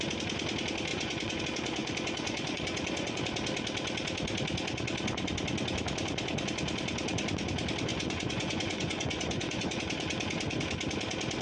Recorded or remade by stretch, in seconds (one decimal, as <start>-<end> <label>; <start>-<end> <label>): 0.0-0.9 recorded; 0.9-1.4 remade; 1.4-1.8 recorded; 1.8-3.2 remade; 3.2-7.9 recorded; 7.9-9.8 remade; 9.8-11.4 recorded